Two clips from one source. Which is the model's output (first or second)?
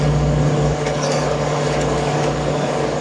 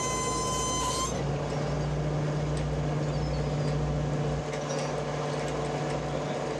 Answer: first